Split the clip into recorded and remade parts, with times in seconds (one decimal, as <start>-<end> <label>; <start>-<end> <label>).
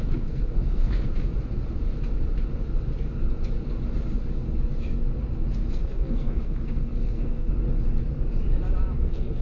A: 0.0-1.1 remade; 1.1-5.7 recorded; 5.7-7.5 remade; 7.5-9.0 recorded; 9.0-9.4 remade